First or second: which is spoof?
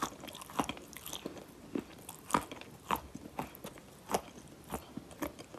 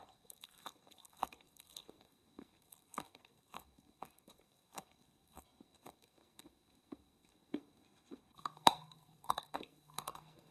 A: second